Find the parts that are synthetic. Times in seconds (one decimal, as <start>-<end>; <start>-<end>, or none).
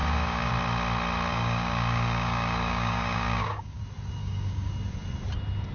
0.0-0.5; 1.3-3.8; 4.2-4.7